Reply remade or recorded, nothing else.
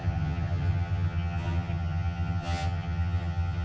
remade